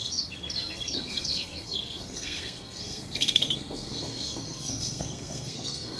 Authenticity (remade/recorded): remade